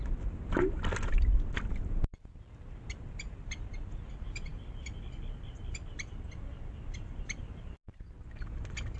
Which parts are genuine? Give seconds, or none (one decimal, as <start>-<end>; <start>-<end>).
0.0-9.0